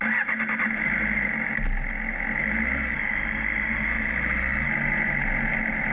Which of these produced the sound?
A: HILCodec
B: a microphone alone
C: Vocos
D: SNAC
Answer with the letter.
B